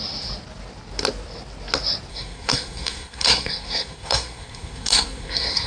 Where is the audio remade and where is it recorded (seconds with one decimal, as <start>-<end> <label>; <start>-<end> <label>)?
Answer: 0.0-2.1 recorded; 2.1-5.7 remade